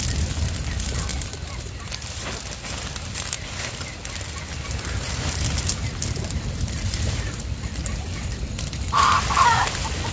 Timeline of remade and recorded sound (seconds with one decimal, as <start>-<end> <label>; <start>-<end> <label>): 0.0-10.1 recorded